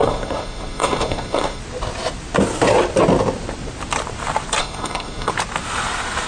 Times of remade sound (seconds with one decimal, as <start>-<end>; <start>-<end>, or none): 0.0-1.6; 4.6-5.3